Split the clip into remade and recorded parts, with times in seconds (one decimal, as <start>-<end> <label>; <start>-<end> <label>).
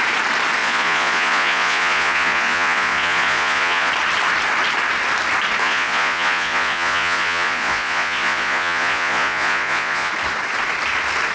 0.0-0.6 recorded; 0.6-3.9 remade; 3.9-5.6 recorded; 5.6-10.1 remade; 10.1-11.3 recorded